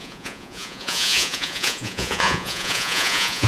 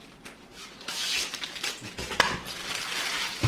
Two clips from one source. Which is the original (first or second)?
second